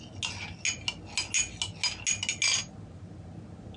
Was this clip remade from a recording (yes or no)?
no